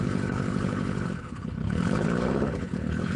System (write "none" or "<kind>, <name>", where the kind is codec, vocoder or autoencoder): codec, HILCodec